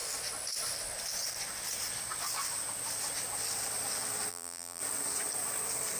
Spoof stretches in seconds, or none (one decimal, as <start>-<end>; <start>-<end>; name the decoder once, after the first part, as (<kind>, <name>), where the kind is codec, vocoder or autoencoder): 4.3-4.8 (vocoder, BigVGAN v2)

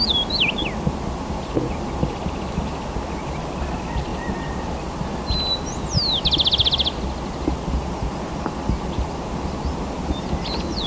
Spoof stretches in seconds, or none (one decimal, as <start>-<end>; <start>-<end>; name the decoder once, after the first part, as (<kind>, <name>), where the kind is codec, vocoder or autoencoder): none

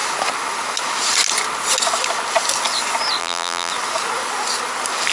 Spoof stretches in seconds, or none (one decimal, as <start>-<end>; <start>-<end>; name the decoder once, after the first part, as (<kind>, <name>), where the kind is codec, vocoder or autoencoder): 3.2-3.7 (vocoder, BigVGAN v2)

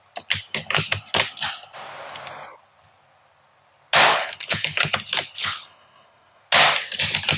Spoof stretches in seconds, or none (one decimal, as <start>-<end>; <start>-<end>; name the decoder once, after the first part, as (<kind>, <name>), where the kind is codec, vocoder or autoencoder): 4.1-4.9 (codec, HILCodec); 5.4-6.4

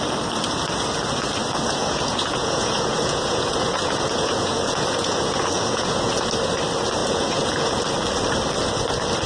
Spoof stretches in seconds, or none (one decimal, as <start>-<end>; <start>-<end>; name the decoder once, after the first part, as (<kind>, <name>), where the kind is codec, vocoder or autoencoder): 1.8-6.3 (vocoder, Vocos); 7.0-7.7

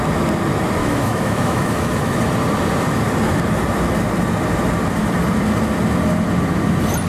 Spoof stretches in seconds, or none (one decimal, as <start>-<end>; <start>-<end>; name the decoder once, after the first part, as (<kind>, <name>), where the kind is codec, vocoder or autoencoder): 0.8-2.2 (autoencoder, DAC-VAE)